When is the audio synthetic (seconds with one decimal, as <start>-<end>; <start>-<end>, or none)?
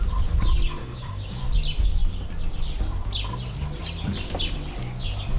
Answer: 0.8-1.4